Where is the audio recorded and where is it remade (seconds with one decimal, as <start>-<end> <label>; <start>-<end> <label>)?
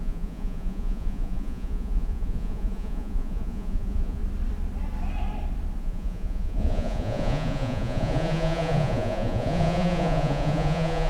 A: 0.0-4.2 remade; 4.2-5.8 recorded; 5.8-11.1 remade